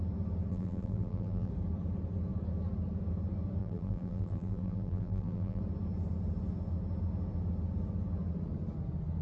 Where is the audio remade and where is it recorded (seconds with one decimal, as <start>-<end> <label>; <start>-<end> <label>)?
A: 0.0-0.5 recorded; 0.5-1.5 remade; 1.5-3.6 recorded; 3.6-5.6 remade; 5.6-9.2 recorded